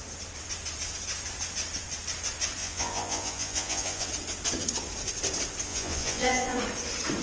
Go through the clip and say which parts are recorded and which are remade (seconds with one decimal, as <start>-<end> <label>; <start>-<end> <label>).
0.0-2.6 recorded; 2.6-4.1 remade; 4.1-5.7 recorded; 5.7-6.6 remade; 6.6-7.2 recorded